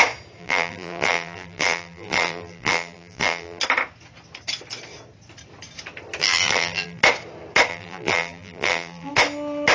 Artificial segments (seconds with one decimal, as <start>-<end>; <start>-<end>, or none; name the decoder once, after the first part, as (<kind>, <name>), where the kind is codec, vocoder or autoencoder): 0.4-3.6 (vocoder, BigVGAN v2); 6.2-7.0; 7.7-9.1